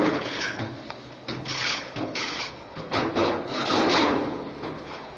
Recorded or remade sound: remade